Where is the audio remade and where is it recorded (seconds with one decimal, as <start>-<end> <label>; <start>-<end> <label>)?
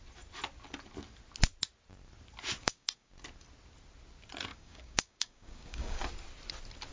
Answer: 0.0-2.6 recorded; 2.6-3.1 remade; 3.1-4.5 recorded; 4.5-6.0 remade; 6.0-6.9 recorded